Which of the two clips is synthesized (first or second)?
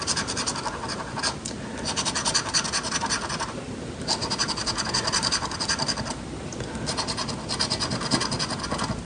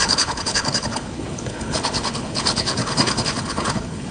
second